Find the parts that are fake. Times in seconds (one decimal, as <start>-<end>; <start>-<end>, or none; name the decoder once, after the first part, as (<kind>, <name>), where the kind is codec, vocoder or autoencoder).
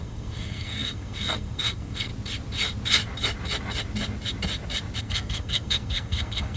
0.0-2.1 (codec, SNAC); 5.0-6.6